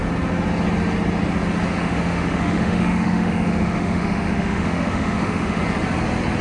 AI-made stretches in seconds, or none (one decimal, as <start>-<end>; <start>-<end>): 1.8-5.6